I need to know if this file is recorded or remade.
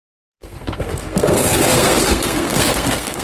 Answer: remade